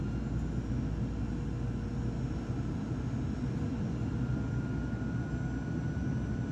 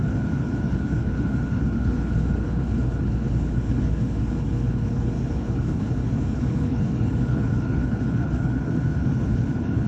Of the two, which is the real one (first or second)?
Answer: first